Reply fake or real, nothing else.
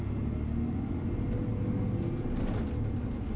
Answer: real